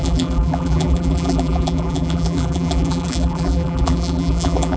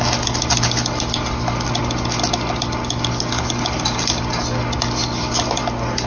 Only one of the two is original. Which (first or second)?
second